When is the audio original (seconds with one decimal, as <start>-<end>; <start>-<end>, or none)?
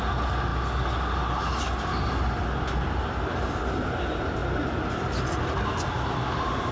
0.0-6.7